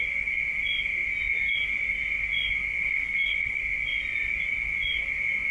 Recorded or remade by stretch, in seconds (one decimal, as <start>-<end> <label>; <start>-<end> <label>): 0.0-2.8 recorded; 2.8-3.6 remade; 3.6-5.5 recorded